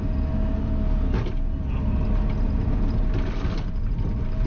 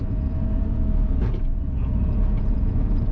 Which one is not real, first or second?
second